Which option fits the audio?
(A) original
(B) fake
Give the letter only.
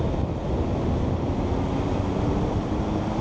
A